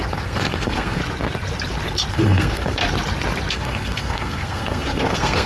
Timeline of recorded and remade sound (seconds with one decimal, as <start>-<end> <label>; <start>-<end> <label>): 0.0-1.0 remade; 1.0-2.1 recorded; 2.1-2.8 remade; 2.8-3.5 recorded; 3.5-5.5 remade